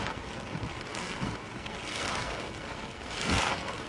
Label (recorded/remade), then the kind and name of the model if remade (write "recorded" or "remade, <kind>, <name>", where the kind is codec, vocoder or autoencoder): remade, codec, SNAC